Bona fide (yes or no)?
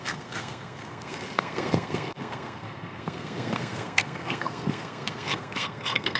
no